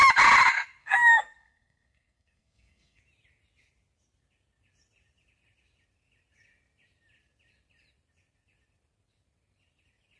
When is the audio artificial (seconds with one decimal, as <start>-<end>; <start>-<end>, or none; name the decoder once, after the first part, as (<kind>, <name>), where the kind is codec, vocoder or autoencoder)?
0.8-3.0 (codec, SNAC)